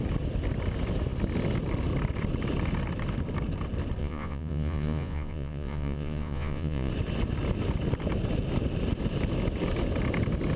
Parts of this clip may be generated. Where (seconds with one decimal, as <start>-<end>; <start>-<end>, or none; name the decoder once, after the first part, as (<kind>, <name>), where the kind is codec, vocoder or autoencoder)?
4.0-6.9 (vocoder, Vocos)